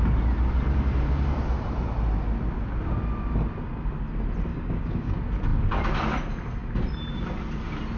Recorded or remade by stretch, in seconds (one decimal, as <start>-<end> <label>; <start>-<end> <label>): 0.0-4.5 recorded; 4.5-5.1 remade; 5.1-8.0 recorded